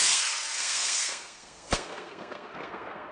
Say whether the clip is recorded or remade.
remade